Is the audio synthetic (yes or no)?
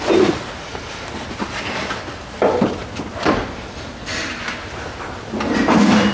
no